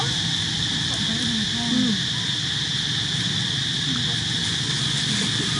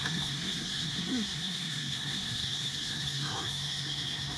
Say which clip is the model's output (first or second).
second